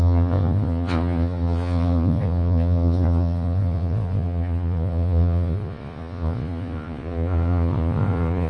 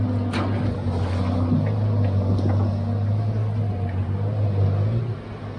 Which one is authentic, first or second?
second